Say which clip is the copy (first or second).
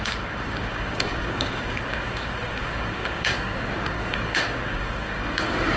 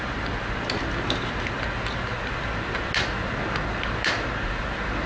first